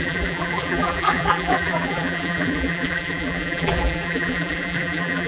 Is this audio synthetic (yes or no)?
yes